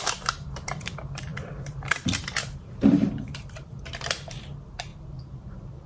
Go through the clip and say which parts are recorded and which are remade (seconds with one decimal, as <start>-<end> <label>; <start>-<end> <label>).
0.0-4.9 remade; 4.9-5.5 recorded; 5.5-5.9 remade